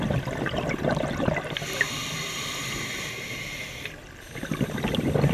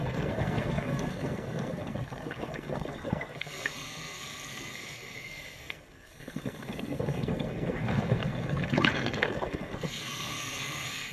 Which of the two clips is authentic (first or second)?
first